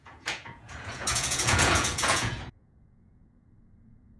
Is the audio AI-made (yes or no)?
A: yes